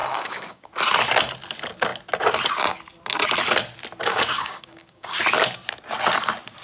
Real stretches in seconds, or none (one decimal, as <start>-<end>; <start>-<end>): 0.7-4.0; 5.2-6.6